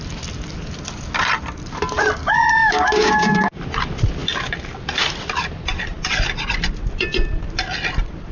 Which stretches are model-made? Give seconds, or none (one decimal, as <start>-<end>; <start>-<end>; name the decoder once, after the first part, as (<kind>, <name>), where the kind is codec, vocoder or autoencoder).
2.2-3.6 (codec, DAC)